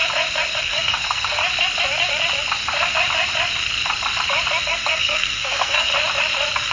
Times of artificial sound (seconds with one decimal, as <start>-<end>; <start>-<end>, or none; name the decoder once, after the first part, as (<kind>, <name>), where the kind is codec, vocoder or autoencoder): 0.6-1.4 (codec, SNAC); 4.6-5.9